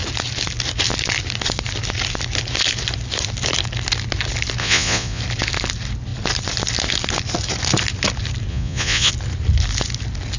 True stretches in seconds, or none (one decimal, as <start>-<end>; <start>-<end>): 0.0-4.6; 5.2-8.5; 9.1-10.4